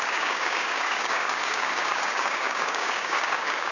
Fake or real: fake